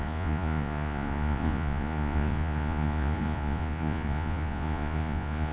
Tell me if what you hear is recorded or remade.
remade